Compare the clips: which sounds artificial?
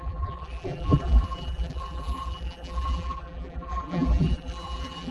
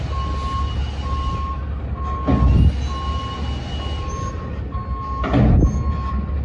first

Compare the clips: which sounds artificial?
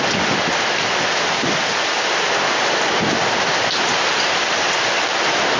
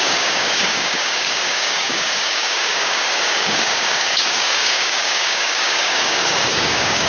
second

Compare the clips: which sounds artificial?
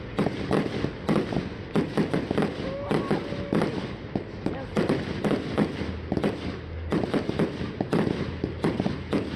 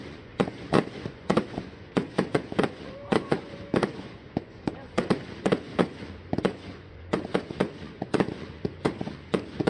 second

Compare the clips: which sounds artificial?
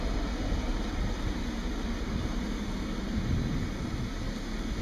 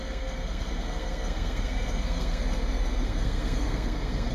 second